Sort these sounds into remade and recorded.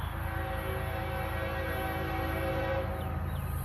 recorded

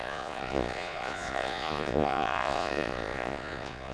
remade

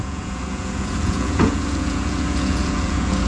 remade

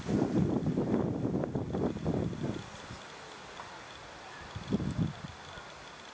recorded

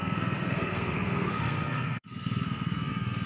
remade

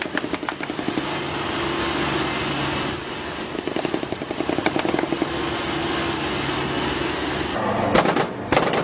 recorded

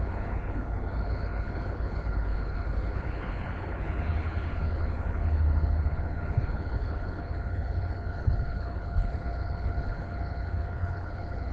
remade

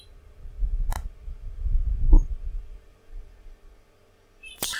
recorded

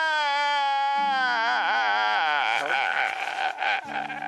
recorded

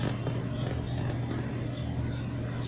recorded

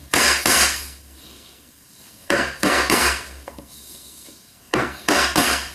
remade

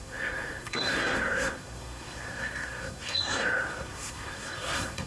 remade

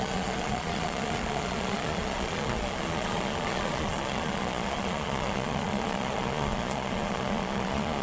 remade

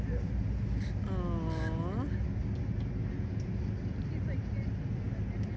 recorded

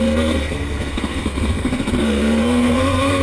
remade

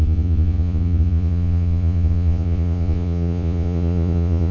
remade